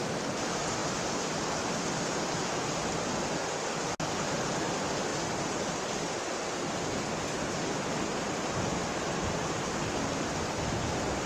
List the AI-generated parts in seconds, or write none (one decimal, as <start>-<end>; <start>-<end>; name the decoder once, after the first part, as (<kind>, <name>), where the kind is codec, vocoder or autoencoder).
none